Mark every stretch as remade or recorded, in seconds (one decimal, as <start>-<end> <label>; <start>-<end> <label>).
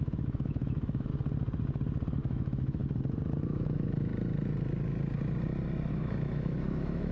0.0-1.1 remade; 1.1-2.2 recorded; 2.2-2.8 remade; 2.8-3.4 recorded; 3.4-4.1 remade; 4.1-5.9 recorded; 5.9-7.1 remade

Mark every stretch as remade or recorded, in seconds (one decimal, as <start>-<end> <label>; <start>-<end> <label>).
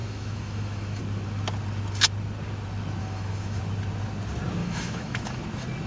0.0-1.0 remade; 1.0-3.0 recorded; 3.0-3.6 remade; 3.6-4.6 recorded; 4.6-5.4 remade; 5.4-5.9 recorded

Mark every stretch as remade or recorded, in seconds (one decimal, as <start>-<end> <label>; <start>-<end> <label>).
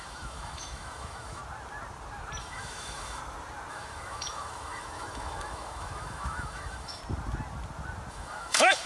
0.0-1.4 remade; 1.4-2.4 recorded; 2.4-3.2 remade; 3.2-3.7 recorded; 3.7-7.0 remade; 7.0-8.1 recorded; 8.1-8.9 remade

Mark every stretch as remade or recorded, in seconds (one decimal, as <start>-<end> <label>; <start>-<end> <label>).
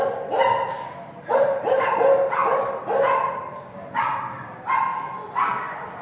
0.0-6.0 recorded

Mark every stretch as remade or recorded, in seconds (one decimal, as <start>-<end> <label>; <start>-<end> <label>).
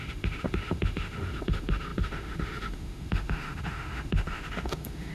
0.0-5.1 remade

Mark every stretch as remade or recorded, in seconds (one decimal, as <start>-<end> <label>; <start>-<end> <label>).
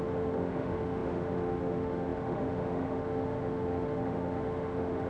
0.0-5.1 remade